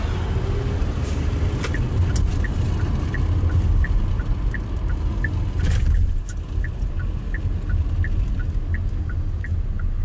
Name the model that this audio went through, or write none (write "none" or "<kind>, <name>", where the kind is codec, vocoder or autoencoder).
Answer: none